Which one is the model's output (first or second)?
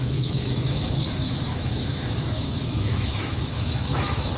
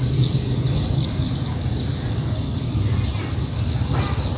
first